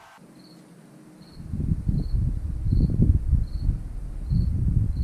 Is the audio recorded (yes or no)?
yes